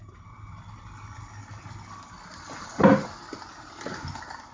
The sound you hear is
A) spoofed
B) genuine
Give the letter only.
B